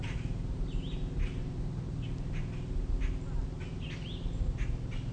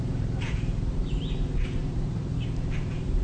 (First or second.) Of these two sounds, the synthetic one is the second